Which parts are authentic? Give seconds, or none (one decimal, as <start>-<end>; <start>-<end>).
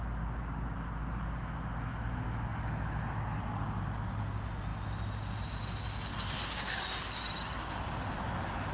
0.0-8.7